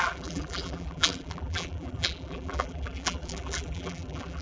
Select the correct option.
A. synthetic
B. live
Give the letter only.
A